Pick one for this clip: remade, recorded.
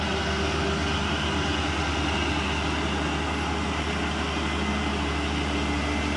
recorded